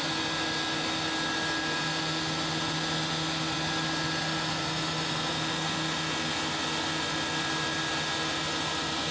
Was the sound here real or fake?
real